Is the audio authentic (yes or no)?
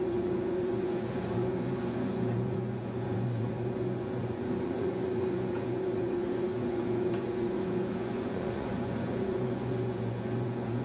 no